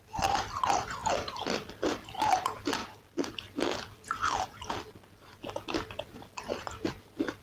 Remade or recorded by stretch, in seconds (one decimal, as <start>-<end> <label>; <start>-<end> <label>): 0.0-1.0 recorded; 1.0-2.3 remade; 2.3-7.4 recorded